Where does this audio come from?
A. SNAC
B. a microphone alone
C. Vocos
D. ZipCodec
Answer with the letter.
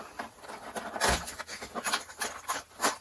B